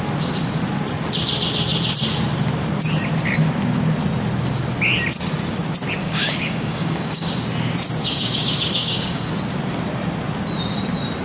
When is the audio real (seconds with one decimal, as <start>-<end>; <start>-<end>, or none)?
0.0-6.0; 7.3-8.0; 9.3-11.2